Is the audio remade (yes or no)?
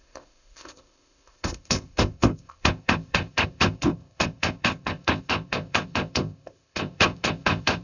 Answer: yes